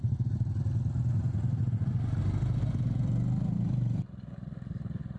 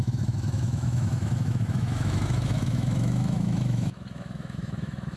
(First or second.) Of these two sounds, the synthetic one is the second